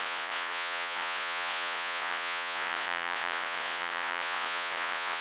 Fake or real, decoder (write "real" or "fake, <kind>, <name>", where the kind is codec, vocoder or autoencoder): fake, vocoder, Vocos